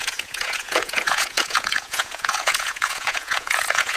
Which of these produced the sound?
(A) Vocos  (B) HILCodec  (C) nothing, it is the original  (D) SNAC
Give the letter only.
A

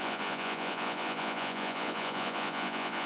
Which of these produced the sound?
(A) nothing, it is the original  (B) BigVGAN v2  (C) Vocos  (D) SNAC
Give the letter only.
C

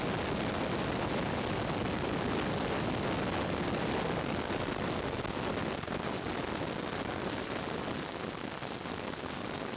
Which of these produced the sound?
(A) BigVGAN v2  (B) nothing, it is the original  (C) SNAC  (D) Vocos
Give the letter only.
B